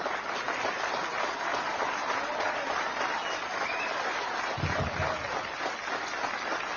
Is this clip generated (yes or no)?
no